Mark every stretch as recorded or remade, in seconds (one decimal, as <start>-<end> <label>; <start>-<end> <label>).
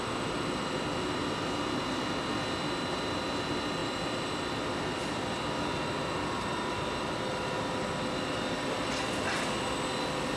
0.0-10.4 recorded